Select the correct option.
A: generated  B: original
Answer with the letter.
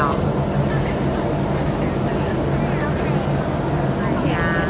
B